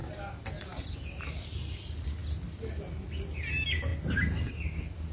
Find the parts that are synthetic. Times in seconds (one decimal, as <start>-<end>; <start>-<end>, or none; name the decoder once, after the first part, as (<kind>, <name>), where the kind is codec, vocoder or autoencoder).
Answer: none